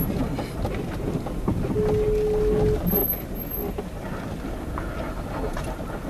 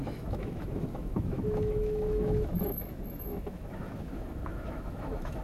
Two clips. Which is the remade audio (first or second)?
second